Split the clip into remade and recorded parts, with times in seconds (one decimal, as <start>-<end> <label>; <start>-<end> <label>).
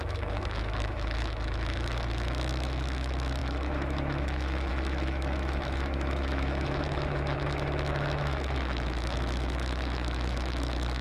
0.0-11.0 remade